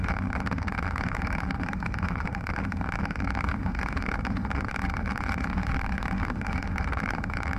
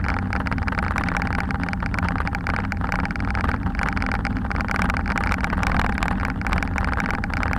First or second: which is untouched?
second